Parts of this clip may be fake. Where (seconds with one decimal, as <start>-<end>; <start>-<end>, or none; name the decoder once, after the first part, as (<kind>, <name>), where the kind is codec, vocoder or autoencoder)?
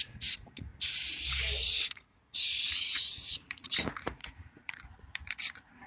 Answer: 0.0-0.7 (vocoder, Vocos); 1.6-5.9